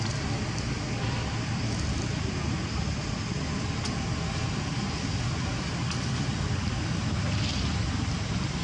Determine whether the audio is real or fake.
real